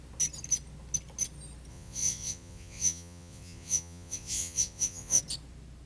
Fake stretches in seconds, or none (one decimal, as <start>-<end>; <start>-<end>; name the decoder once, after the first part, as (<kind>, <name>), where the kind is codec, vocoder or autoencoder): 1.7-5.2 (vocoder, Vocos)